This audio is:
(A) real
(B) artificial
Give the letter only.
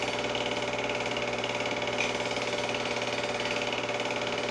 A